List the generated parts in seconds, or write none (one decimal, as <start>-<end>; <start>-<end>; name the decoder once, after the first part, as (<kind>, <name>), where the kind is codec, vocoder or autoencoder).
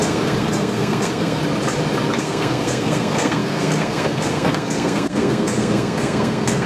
0.0-1.4 (codec, SNAC); 2.2-6.7